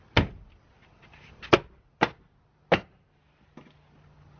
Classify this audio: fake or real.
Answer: real